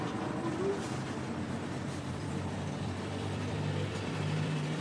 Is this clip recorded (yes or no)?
no